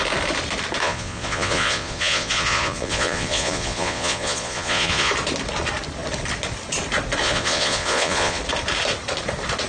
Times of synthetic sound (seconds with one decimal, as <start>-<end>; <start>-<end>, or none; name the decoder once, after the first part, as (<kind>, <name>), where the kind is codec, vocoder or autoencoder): 0.8-5.1 (vocoder, Vocos); 7.2-8.4